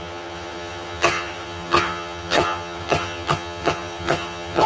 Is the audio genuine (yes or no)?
no